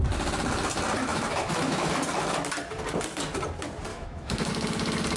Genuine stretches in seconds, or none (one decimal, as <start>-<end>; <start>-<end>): 0.0-1.1; 1.9-3.9; 4.5-5.2